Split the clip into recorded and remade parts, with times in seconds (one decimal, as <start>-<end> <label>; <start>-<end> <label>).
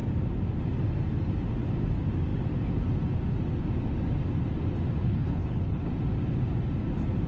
0.0-5.0 recorded; 5.0-5.9 remade; 5.9-7.3 recorded